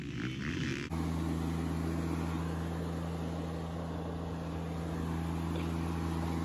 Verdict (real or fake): real